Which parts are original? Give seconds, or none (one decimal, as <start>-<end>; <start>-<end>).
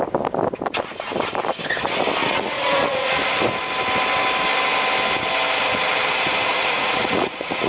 0.0-2.2; 3.2-6.5